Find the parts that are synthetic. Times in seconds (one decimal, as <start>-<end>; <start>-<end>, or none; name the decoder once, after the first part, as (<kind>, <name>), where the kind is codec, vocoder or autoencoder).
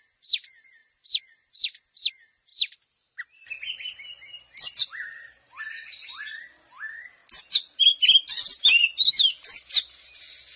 0.8-1.5 (vocoder, BigVGAN v2); 2.5-5.6